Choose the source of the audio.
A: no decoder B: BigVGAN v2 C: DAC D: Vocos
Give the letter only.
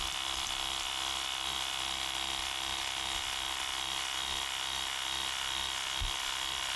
A